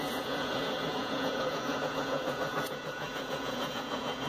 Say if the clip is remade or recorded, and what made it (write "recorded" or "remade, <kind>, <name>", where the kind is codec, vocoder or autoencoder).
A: remade, vocoder, Vocos